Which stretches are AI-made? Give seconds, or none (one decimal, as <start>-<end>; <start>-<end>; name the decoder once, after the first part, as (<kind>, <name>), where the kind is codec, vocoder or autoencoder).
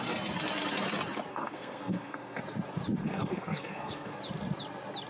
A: 1.3-2.4 (codec, SNAC); 3.0-4.2